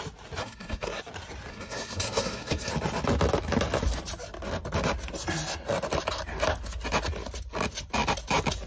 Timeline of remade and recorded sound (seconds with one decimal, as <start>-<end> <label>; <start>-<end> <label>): 0.0-0.4 recorded; 0.4-1.0 remade; 1.0-1.5 recorded; 1.5-2.7 remade; 2.7-8.7 recorded